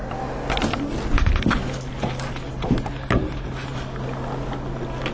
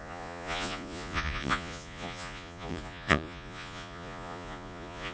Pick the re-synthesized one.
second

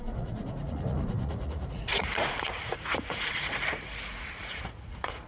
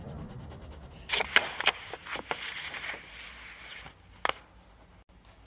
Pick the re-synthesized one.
first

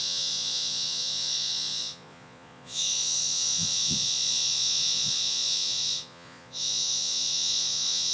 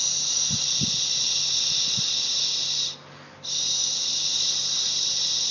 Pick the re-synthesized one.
first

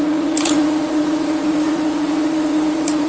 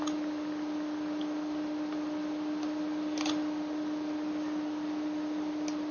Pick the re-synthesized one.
first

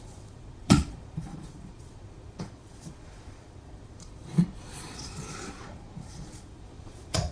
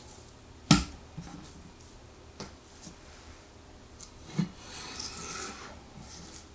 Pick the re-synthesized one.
first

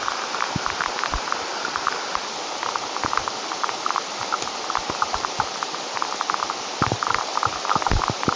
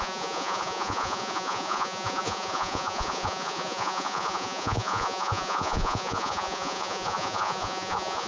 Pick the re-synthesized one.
second